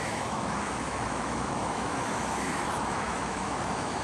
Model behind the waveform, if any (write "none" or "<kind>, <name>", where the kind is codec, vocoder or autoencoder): autoencoder, DAC-VAE